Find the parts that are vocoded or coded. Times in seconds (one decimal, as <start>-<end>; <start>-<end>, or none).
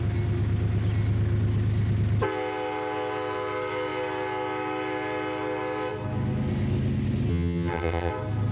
7.3-8.1